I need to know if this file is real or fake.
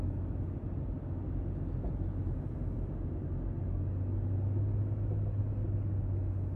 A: real